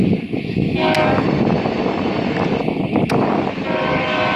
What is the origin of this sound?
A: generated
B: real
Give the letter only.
B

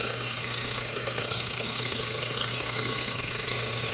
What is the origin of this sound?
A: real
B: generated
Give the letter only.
B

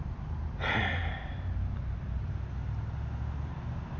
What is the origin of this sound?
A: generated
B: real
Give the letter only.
B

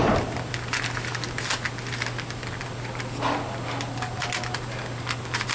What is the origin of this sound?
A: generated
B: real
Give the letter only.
B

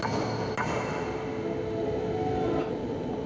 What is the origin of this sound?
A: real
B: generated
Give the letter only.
A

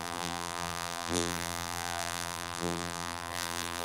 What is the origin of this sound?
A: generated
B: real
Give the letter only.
A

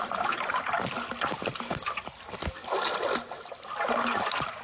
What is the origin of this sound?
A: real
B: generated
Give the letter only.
A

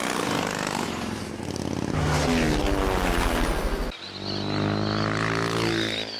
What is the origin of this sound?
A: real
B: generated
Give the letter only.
A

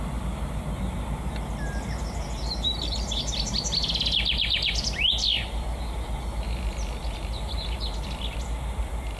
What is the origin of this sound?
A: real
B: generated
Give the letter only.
A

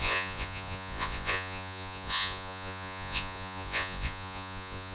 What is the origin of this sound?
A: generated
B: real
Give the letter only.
A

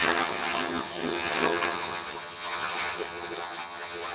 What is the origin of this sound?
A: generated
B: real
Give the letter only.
A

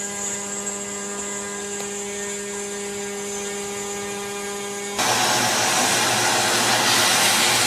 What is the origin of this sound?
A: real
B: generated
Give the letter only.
A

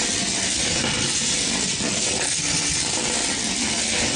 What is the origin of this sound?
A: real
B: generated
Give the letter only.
A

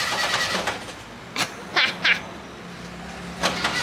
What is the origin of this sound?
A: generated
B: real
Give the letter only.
B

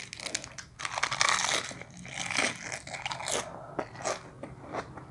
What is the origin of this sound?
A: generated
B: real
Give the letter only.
B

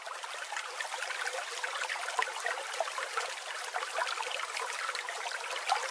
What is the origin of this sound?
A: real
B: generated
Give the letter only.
A